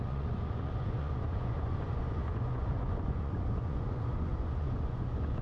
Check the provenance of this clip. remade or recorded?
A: remade